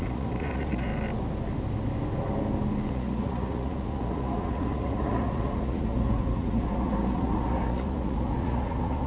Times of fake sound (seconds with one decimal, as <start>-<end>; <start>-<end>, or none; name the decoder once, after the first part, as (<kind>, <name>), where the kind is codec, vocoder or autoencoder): 0.0-0.9 (vocoder, Vocos); 2.9-9.1